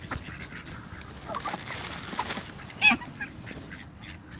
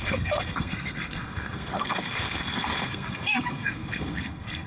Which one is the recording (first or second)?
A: first